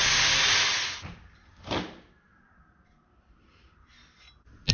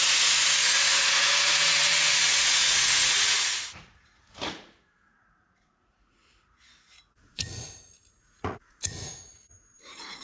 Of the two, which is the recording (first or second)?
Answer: first